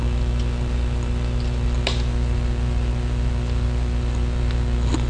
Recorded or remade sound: recorded